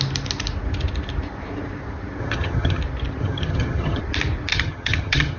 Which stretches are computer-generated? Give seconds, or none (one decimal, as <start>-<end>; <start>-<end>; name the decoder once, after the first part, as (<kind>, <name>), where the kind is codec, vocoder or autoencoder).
2.2-2.8 (vocoder, HiFi-GAN); 3.2-4.0; 4.5-5.4